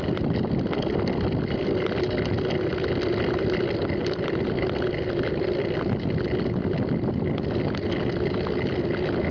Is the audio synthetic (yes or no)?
no